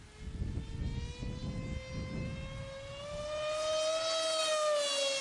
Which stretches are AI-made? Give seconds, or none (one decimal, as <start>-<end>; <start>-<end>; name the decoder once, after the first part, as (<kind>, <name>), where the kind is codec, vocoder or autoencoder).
none